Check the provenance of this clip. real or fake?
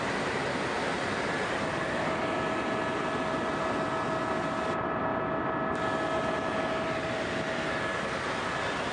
real